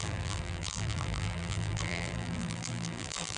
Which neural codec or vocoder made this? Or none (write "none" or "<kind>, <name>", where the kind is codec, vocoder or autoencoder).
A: vocoder, BigVGAN v2